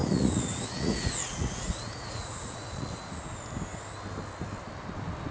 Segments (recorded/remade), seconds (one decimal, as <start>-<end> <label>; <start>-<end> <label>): 0.0-3.2 remade; 3.2-5.3 recorded